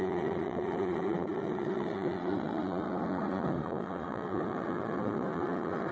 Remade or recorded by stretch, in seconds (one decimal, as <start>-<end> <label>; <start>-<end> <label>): 0.0-5.9 remade